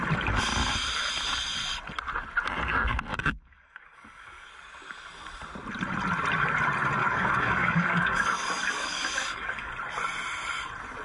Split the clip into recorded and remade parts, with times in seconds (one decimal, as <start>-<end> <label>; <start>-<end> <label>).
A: 0.0-3.1 recorded; 3.1-4.5 remade; 4.5-7.0 recorded; 7.0-9.7 remade; 9.7-11.0 recorded